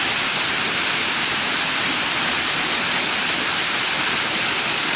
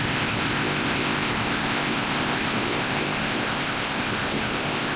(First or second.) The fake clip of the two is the second